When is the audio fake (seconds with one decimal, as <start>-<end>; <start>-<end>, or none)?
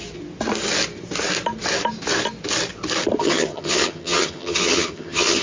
3.2-5.4